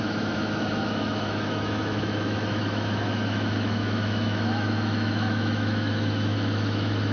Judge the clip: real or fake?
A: fake